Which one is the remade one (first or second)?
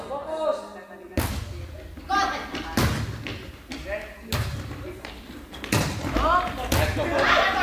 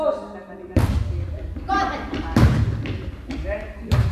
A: second